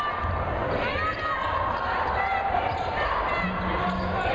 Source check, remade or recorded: recorded